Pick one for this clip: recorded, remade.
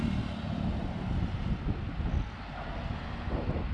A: recorded